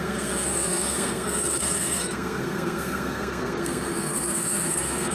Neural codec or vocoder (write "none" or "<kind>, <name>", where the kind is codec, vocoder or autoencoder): codec, SNAC